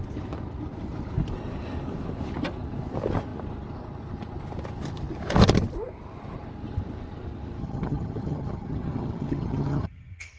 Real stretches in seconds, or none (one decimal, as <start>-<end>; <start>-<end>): 0.0-7.6